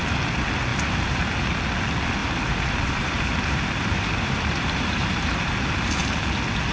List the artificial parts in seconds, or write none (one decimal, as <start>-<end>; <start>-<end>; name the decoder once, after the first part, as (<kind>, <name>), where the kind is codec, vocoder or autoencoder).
0.7-1.3 (vocoder, BigVGAN v2); 2.2-6.0